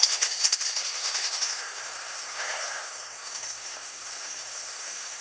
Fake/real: fake